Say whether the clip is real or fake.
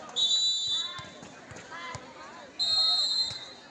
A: real